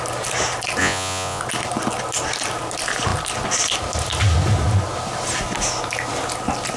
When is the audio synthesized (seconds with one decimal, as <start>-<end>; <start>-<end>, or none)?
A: 0.8-1.4